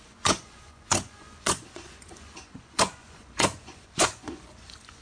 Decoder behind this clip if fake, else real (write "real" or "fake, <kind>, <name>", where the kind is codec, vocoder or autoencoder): fake, vocoder, Vocos